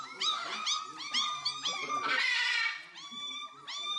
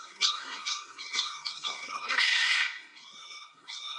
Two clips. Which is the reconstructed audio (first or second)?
second